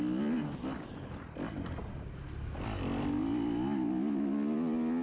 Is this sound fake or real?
real